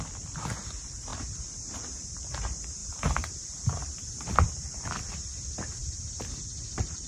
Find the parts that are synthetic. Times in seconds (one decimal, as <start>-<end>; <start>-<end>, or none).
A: 0.0-2.8; 4.3-5.8; 6.5-7.1